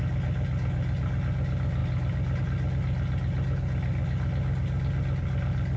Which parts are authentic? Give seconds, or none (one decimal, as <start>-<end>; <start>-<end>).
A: 0.0-5.8